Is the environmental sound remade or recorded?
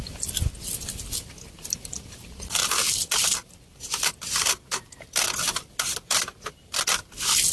recorded